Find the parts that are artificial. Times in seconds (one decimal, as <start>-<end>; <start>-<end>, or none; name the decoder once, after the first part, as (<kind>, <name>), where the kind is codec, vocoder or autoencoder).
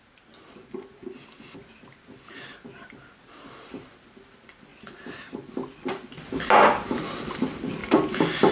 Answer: 4.7-6.1 (vocoder, BigVGAN v2)